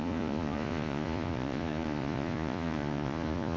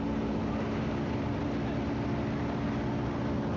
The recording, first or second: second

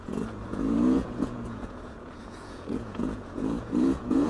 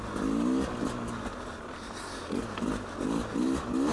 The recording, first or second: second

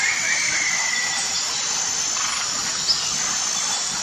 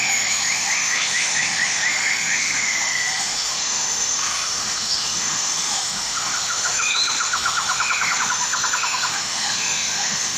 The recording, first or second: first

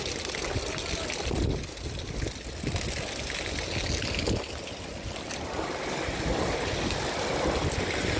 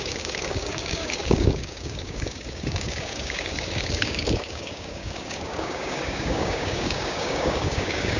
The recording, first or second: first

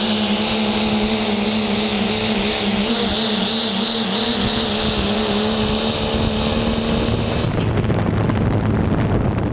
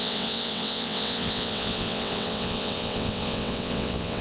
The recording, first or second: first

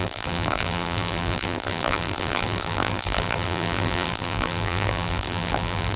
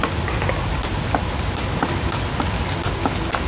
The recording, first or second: second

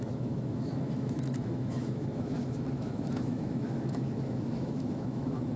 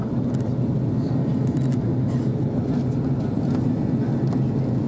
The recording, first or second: second